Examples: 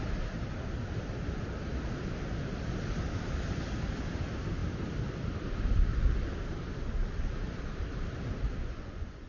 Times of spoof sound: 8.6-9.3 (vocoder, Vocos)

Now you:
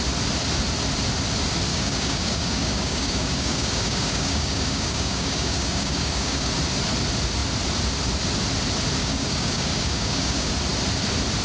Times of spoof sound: 1.7-6.5 (codec, DAC); 9.0-10.5

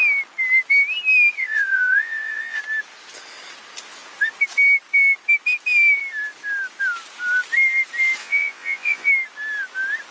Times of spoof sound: 1.4-2.6 (vocoder, Vocos); 8.2-9.1

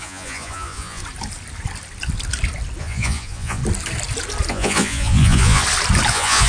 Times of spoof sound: 0.0-1.0 (vocoder, Vocos); 2.8-3.6; 4.5-5.6; 6.1-6.5

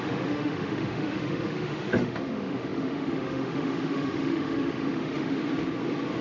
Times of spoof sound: 0.0-5.4 (autoencoder, DAC-VAE)